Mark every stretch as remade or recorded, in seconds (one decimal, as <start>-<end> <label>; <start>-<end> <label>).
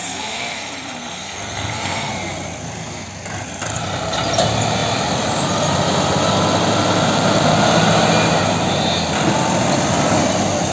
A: 0.0-2.1 remade; 2.1-10.7 recorded